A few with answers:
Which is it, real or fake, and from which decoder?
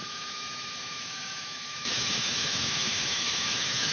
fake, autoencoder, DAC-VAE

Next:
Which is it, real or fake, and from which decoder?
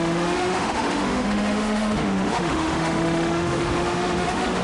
fake, autoencoder, DAC-VAE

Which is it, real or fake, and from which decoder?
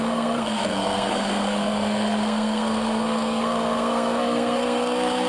fake, codec, SNAC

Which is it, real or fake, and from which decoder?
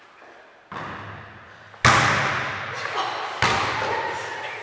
real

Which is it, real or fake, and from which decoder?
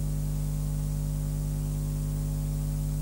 real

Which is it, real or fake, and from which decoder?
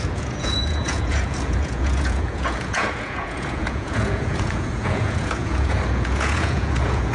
fake, vocoder, Vocos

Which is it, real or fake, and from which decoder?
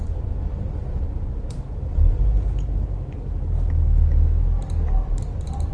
real